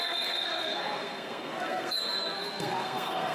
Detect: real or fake fake